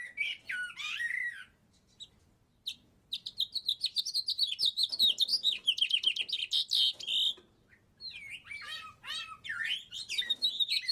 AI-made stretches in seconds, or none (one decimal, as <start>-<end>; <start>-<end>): 5.3-6.2; 8.4-10.9